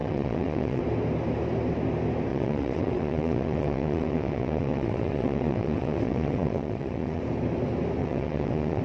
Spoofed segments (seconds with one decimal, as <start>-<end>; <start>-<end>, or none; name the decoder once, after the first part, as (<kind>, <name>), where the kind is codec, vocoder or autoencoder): 0.0-0.8 (vocoder, WaveNeXt); 2.3-7.2; 8.0-8.8